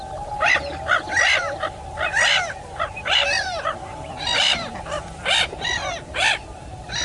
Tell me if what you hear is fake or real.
fake